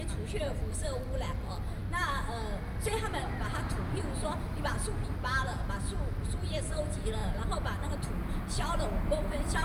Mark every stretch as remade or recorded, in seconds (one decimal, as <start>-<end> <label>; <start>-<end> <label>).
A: 0.0-9.6 recorded